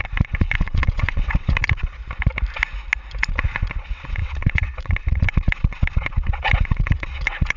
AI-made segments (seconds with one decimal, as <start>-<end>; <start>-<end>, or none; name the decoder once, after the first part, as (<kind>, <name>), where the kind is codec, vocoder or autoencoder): 0.0-2.0 (vocoder, WaveNeXt); 3.3-7.6